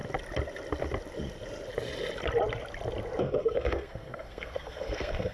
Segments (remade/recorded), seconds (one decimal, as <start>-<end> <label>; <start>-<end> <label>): 0.0-3.2 recorded; 3.2-5.3 remade